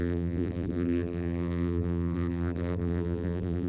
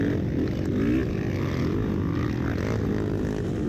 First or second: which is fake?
first